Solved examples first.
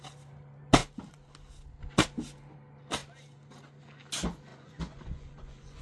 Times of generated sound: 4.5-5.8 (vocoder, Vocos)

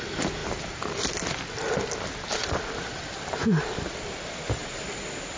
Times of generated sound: none

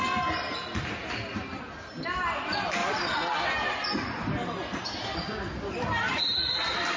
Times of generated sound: none

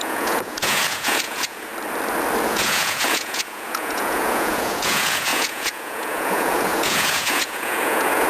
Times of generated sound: 0.0-1.7 (vocoder, Vocos); 2.5-8.3

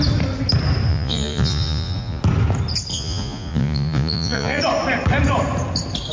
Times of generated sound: 0.9-2.2 (vocoder, Vocos); 2.9-4.6

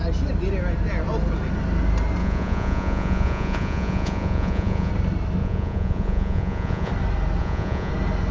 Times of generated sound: 2.2-4.9 (vocoder, Vocos); 5.4-6.9; 7.4-7.9

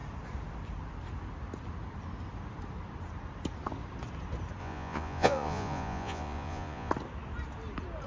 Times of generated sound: 4.6-6.9 (vocoder, Vocos)